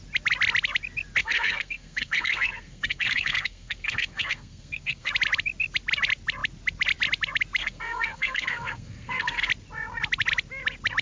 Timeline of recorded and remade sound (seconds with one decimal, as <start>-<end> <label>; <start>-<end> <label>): 0.0-1.2 recorded; 1.2-5.1 remade; 5.1-7.6 recorded; 7.6-9.5 remade; 9.5-11.0 recorded